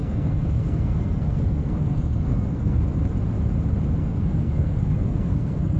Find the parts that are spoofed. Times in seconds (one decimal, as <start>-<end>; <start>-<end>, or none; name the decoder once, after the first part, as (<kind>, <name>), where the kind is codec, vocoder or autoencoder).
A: 0.0-2.8 (codec, SNAC); 4.0-5.8